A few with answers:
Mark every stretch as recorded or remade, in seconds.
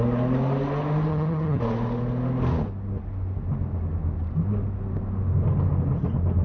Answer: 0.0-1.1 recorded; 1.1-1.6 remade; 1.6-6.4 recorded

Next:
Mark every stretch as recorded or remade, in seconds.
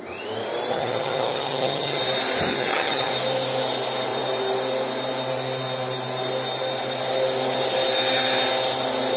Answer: 0.0-0.7 recorded; 0.7-2.0 remade; 2.0-2.5 recorded; 2.5-3.1 remade; 3.1-9.2 recorded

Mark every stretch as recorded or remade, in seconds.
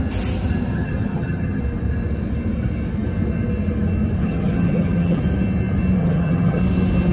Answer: 0.0-0.7 recorded; 0.7-1.6 remade; 1.6-4.2 recorded; 4.2-5.2 remade; 5.2-6.0 recorded; 6.0-6.6 remade; 6.6-7.1 recorded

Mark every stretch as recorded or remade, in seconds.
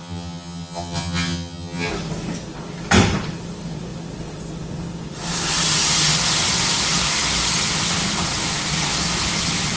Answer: 0.0-1.9 remade; 1.9-9.8 recorded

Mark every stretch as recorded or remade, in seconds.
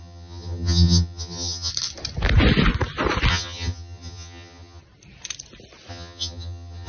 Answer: 0.0-1.7 remade; 1.7-3.3 recorded; 3.3-4.8 remade; 4.8-5.9 recorded; 5.9-6.9 remade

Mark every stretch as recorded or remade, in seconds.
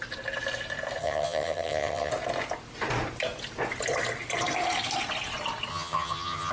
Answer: 0.0-1.0 recorded; 1.0-2.1 remade; 2.1-5.7 recorded; 5.7-6.5 remade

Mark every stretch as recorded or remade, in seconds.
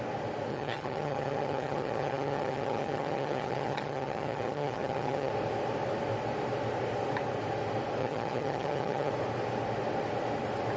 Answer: 0.0-0.5 recorded; 0.5-5.3 remade; 5.3-8.0 recorded; 8.0-9.1 remade; 9.1-10.8 recorded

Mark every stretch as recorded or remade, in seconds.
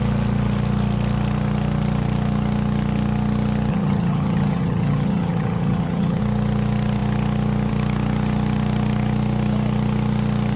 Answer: 0.0-3.7 recorded; 3.7-6.2 remade; 6.2-10.6 recorded